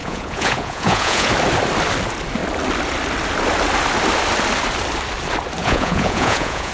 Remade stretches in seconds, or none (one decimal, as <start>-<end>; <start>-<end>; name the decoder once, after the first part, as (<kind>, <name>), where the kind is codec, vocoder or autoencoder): 0.0-1.3 (vocoder, Vocos); 5.6-6.7